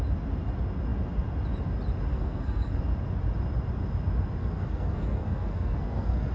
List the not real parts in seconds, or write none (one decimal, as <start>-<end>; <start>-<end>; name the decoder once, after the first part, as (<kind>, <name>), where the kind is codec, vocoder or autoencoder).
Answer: 2.1-2.8 (codec, SNAC); 4.4-6.3